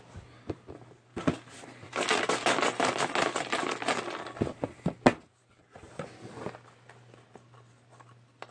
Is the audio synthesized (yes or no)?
no